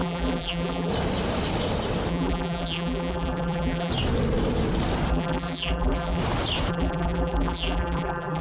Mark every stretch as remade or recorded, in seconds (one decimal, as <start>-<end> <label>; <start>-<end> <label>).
0.0-0.9 remade; 0.9-2.1 recorded; 2.1-3.9 remade; 3.9-5.1 recorded; 5.1-6.2 remade; 6.2-6.7 recorded; 6.7-8.4 remade